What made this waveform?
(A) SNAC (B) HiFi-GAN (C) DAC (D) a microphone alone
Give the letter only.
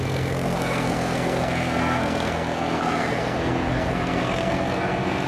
A